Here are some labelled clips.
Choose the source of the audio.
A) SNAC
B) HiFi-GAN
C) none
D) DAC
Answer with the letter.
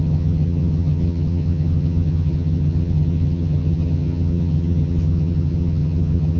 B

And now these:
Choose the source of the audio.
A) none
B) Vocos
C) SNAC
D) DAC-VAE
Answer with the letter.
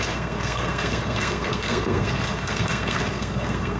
C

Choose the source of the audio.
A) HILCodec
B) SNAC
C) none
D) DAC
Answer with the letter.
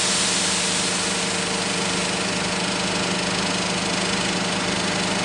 C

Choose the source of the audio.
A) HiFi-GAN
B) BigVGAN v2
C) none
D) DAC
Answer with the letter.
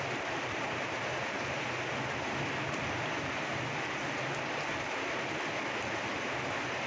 C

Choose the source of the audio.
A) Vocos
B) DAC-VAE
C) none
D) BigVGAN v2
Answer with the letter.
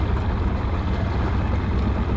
C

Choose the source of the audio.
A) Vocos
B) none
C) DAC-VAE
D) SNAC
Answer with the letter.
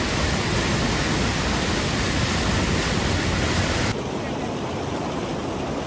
B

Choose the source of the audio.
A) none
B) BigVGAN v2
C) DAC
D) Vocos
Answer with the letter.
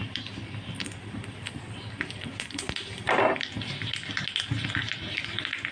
A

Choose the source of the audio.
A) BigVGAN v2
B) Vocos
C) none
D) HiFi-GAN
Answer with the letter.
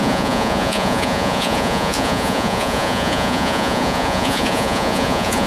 B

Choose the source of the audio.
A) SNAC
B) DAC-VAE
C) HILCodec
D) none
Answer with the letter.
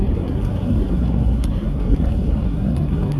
A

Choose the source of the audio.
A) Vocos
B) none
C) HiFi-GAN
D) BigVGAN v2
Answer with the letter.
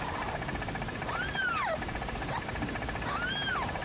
B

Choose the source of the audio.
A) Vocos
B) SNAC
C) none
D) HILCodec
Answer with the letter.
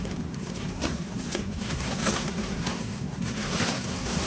B